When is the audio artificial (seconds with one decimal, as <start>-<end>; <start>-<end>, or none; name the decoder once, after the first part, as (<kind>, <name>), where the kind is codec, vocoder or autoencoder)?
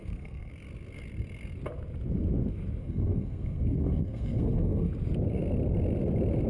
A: 0.0-0.5 (codec, SNAC); 2.8-4.9